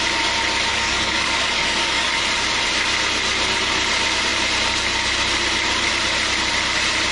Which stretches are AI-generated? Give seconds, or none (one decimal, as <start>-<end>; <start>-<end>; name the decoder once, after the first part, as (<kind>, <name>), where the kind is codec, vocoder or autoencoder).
0.7-2.2 (codec, DAC)